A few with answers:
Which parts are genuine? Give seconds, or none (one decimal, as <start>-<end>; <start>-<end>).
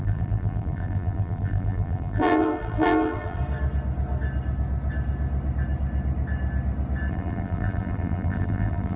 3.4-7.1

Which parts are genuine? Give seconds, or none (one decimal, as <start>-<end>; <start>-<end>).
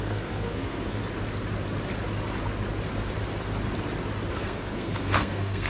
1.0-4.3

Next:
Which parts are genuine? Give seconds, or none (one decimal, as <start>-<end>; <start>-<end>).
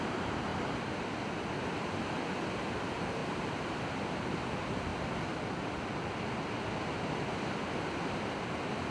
0.5-2.5; 4.9-8.0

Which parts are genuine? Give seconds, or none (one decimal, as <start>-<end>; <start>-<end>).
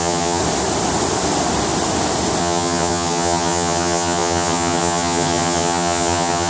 0.4-2.4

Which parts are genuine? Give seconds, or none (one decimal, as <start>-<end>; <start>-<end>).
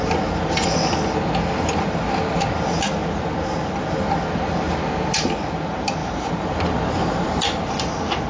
0.0-6.0; 7.7-8.3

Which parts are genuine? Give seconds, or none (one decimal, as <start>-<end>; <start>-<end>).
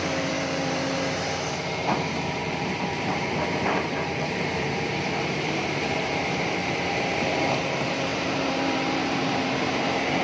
none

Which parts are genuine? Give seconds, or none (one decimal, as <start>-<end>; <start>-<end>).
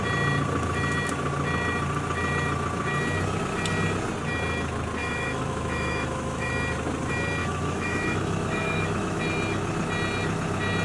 0.0-5.0; 6.5-7.4; 9.2-10.8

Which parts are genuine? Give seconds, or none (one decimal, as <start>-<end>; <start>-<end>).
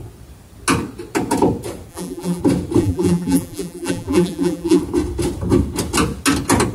0.0-1.9; 2.4-2.8; 4.8-6.7